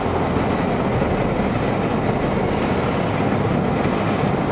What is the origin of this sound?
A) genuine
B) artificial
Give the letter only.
A